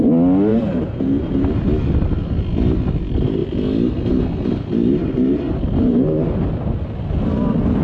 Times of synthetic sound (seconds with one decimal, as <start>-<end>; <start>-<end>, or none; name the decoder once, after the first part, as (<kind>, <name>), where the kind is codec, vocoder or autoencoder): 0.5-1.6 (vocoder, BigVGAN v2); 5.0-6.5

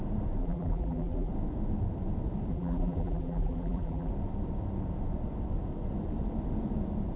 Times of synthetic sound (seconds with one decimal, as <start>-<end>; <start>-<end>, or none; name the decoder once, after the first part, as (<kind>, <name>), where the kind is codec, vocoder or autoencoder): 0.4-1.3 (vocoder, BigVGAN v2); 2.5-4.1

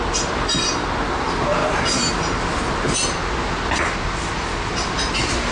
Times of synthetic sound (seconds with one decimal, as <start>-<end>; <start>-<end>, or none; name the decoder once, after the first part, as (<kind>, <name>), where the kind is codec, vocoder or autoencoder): none

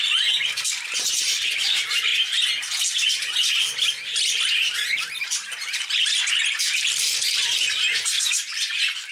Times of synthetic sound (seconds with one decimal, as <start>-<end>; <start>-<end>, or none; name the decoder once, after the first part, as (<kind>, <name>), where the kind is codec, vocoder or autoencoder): 0.0-2.1 (vocoder, BigVGAN v2); 6.6-9.1

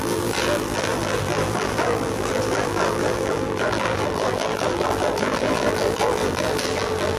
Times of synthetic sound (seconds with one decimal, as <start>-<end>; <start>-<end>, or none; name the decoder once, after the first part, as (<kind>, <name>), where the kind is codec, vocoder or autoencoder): 0.0-7.2 (vocoder, BigVGAN v2)

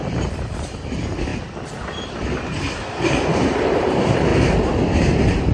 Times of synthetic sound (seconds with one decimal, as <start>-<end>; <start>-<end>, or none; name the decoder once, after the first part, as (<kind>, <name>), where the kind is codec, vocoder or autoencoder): 0.0-1.3 (vocoder, BigVGAN v2); 3.4-4.3